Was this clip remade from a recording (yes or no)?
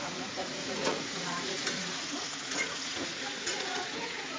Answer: yes